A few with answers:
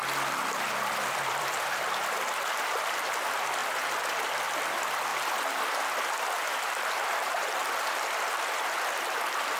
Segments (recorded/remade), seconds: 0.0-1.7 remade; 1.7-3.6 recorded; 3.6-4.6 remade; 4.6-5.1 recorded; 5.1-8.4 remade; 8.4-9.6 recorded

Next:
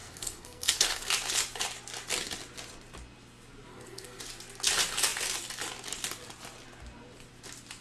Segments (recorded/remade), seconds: 0.0-1.1 remade; 1.1-3.7 recorded; 3.7-4.2 remade; 4.2-7.8 recorded

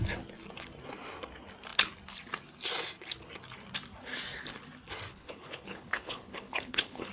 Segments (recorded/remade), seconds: 0.0-5.1 recorded; 5.1-7.1 remade

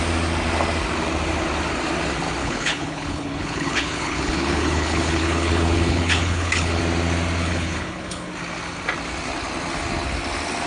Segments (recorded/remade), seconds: 0.0-2.4 recorded; 2.4-6.8 remade; 6.8-7.4 recorded; 7.4-8.3 remade; 8.3-10.7 recorded

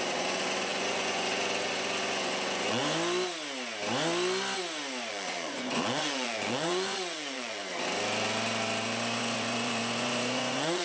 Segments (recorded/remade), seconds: 0.0-2.8 remade; 2.8-5.1 recorded; 5.1-7.6 remade; 7.6-9.2 recorded; 9.2-10.8 remade

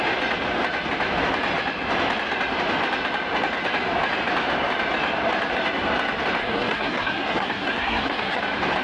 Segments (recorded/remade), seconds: 0.0-6.4 recorded; 6.4-8.4 remade; 8.4-8.8 recorded

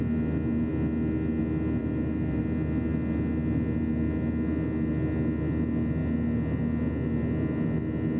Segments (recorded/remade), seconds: 0.0-1.8 recorded; 1.8-2.4 remade; 2.4-8.2 recorded